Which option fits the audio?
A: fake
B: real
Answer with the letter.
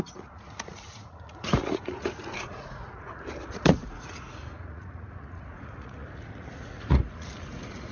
A